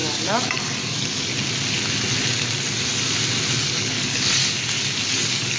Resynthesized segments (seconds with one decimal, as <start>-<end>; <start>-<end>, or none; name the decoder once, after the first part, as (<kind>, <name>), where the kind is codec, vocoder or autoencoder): 0.0-1.3 (codec, DAC); 3.6-4.4; 5.1-5.6